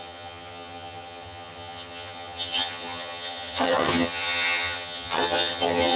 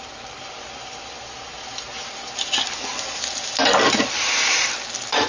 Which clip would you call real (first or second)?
second